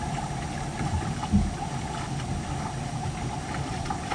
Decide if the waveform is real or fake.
real